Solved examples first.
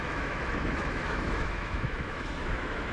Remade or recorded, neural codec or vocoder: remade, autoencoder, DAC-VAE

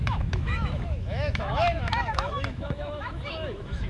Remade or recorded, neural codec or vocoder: remade, autoencoder, DAC-VAE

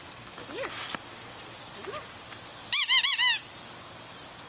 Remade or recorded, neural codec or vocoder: recorded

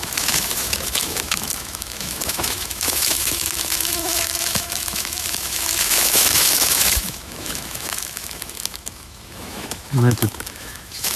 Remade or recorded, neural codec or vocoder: remade, autoencoder, DAC-VAE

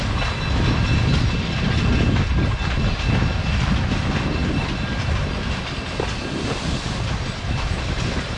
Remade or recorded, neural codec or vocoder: recorded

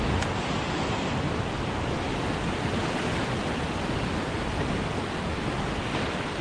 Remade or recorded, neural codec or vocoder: recorded